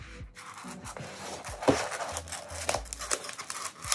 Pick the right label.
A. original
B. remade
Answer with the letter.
A